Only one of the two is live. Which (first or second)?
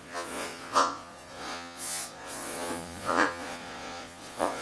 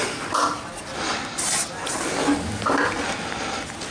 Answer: second